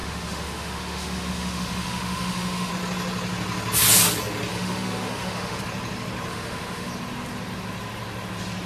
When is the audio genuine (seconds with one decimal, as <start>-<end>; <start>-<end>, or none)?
2.7-4.5; 5.6-6.3; 6.9-8.7